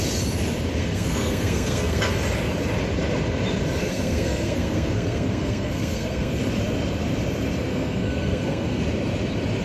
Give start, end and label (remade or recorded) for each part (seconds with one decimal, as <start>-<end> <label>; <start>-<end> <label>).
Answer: 0.0-0.8 recorded; 0.8-2.1 remade; 2.1-3.8 recorded; 3.8-6.4 remade; 6.4-7.7 recorded; 7.7-8.8 remade; 8.8-9.6 recorded